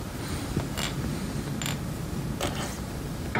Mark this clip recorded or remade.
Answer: recorded